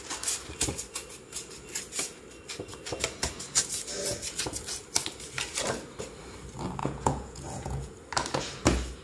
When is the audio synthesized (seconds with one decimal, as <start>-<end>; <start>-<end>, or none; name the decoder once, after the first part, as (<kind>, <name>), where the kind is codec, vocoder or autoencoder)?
6.8-7.9 (vocoder, Vocos)